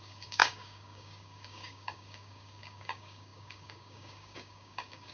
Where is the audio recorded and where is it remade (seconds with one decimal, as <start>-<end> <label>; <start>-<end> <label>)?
0.0-5.1 remade